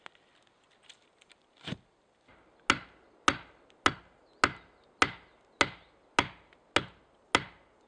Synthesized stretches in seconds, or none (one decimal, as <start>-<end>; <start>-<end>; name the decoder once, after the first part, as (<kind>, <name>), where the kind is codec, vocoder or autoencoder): none